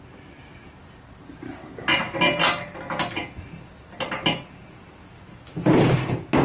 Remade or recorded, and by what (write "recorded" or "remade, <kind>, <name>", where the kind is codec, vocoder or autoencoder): recorded